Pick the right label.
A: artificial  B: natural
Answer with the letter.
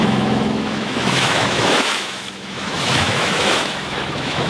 A